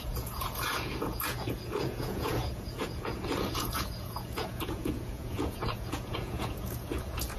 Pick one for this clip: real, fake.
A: fake